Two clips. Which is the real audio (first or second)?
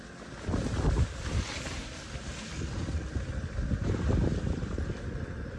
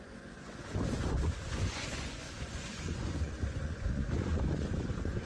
first